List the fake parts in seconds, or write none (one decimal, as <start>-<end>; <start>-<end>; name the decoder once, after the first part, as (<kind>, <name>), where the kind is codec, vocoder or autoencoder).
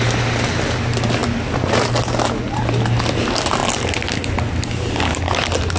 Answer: none